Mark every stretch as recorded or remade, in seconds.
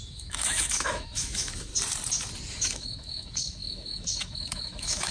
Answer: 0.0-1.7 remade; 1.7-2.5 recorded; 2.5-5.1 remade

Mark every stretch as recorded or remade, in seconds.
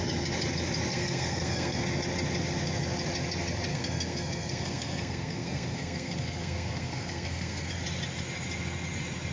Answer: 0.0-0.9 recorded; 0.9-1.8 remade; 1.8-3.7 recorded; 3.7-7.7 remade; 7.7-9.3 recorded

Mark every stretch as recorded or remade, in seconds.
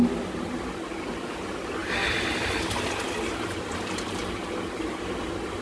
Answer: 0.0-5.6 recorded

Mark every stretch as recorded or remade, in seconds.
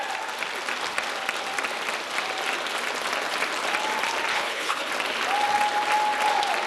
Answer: 0.0-4.3 recorded; 4.3-4.9 remade; 4.9-6.7 recorded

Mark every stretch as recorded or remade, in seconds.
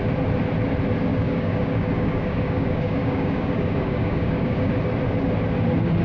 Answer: 0.0-1.1 recorded; 1.1-4.7 remade; 4.7-6.0 recorded